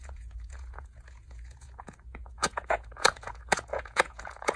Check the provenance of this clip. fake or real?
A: fake